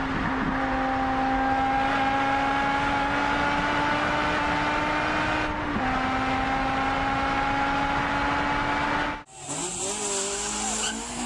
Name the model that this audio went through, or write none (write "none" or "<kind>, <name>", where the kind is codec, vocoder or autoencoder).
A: none